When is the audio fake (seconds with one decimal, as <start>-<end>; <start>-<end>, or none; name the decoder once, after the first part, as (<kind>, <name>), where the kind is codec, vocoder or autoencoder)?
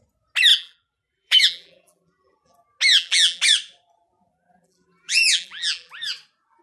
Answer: 0.5-2.5 (vocoder, BigVGAN v2); 2.9-3.4; 4.3-5.9